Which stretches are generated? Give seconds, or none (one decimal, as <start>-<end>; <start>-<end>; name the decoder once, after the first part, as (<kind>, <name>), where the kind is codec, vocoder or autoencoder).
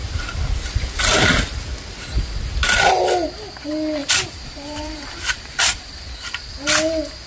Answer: 0.0-1.0 (vocoder, BigVGAN v2); 4.0-5.6